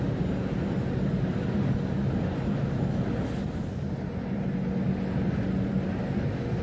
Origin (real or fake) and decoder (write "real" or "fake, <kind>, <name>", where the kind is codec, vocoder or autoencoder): real